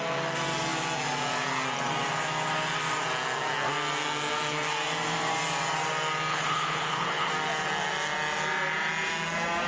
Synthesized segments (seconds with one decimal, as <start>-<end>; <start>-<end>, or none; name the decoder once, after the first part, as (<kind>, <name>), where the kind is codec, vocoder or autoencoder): 6.3-7.3 (codec, HILCodec)